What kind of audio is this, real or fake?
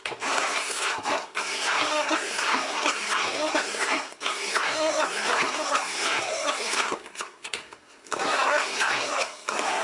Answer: fake